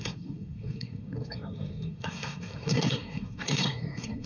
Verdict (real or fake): fake